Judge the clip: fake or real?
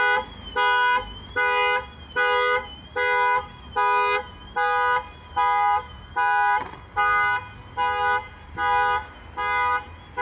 real